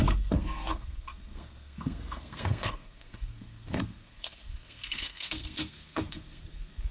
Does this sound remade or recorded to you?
remade